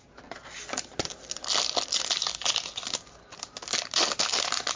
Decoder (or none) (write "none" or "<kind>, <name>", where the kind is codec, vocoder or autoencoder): none